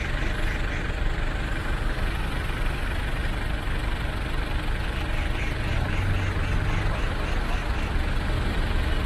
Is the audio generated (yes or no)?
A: no